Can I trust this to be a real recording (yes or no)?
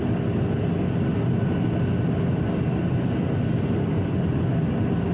yes